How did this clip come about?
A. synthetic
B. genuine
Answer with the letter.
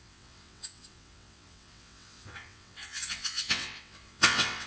A